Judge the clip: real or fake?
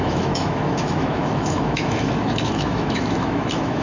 fake